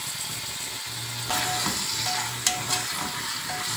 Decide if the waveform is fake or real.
real